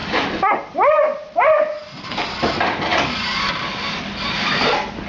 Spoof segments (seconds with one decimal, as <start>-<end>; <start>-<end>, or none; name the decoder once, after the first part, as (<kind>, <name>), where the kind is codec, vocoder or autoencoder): none